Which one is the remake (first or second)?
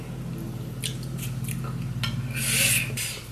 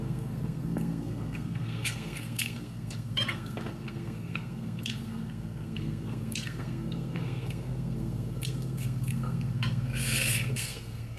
second